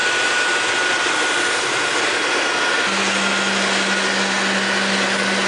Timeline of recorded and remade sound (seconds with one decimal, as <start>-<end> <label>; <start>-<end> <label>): 0.0-5.5 recorded